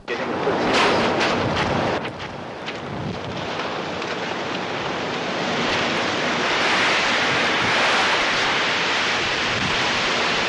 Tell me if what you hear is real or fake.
fake